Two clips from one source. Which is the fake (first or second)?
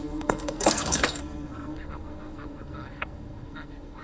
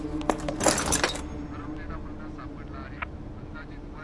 first